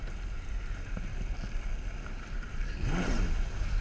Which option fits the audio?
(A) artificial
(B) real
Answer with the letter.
B